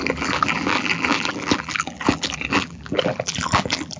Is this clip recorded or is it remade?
remade